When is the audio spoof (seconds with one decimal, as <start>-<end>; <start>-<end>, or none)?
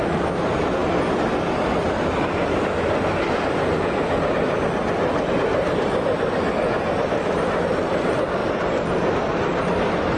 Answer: none